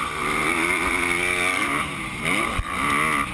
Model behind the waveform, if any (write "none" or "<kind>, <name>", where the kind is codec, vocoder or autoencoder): none